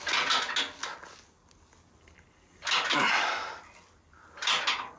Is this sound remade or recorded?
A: recorded